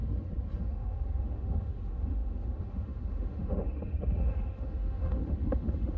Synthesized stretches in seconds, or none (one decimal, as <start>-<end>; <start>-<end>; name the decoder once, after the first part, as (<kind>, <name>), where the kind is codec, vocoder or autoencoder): 0.6-6.0 (autoencoder, DAC-VAE)